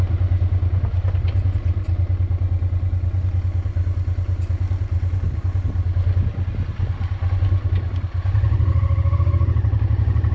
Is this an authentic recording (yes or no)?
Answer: yes